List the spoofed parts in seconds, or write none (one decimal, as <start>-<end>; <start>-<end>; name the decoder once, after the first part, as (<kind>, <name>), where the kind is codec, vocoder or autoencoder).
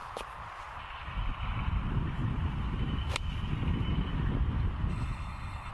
4.9-5.7 (codec, HILCodec)